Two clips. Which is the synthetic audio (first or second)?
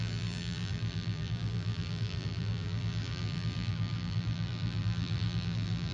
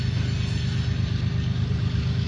first